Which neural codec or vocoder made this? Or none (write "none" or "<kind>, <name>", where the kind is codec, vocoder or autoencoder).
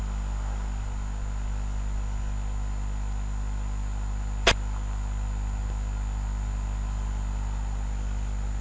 none